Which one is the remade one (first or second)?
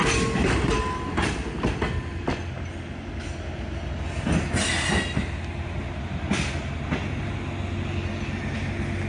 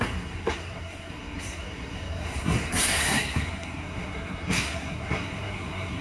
second